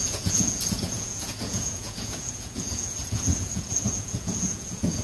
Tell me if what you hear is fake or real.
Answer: fake